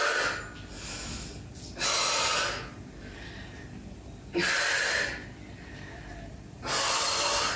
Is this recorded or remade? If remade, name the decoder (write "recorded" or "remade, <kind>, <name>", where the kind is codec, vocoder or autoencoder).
recorded